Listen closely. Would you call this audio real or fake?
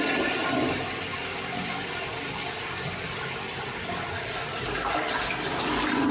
real